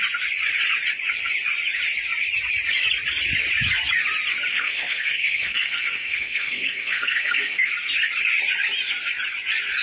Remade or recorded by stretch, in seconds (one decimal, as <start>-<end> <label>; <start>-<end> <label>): 0.0-4.5 recorded; 4.5-7.7 remade; 7.7-9.8 recorded